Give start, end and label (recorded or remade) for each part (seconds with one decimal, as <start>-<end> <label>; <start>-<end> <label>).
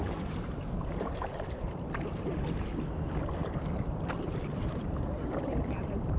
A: 0.0-2.7 remade; 2.7-3.7 recorded; 3.7-6.2 remade